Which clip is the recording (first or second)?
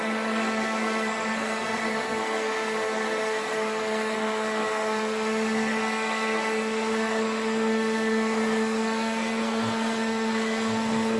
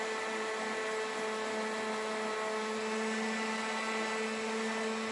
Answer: second